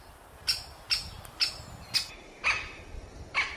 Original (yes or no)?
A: yes